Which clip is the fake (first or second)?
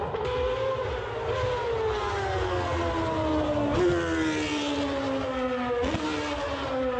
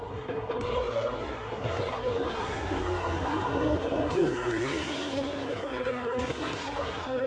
second